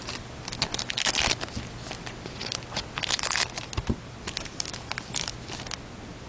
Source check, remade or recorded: recorded